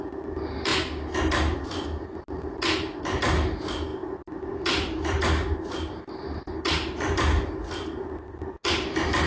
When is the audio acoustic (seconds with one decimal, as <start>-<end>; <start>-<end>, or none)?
0.0-9.3